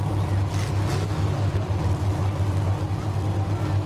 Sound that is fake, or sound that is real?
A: real